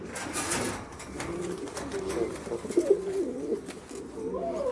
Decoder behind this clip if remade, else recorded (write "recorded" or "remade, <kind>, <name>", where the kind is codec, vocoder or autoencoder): recorded